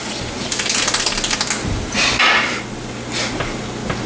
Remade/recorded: recorded